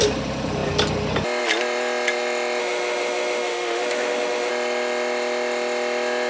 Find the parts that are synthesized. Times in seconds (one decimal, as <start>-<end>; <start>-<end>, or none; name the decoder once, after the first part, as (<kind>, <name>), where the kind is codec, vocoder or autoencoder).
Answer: 2.6-4.5 (autoencoder, DAC-VAE)